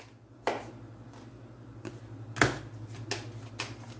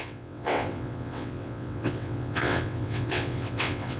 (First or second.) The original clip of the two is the first